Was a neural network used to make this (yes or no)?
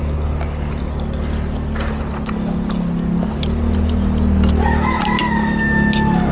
no